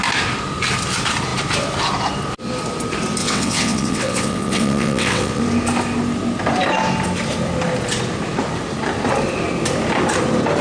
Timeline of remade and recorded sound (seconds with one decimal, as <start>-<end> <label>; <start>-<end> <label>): 0.0-3.2 recorded; 3.2-5.4 remade; 5.4-10.6 recorded